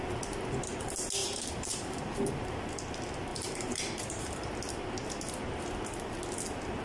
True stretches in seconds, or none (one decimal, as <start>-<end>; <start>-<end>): 0.0-1.2; 2.3-3.3; 4.5-6.8